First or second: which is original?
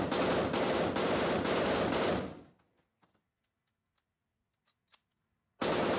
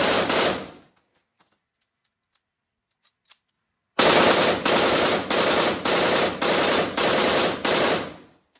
first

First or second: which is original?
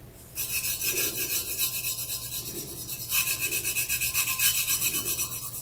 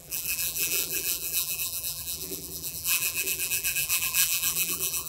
first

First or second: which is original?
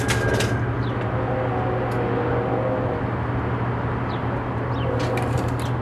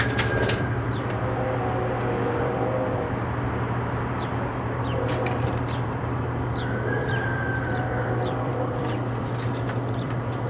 first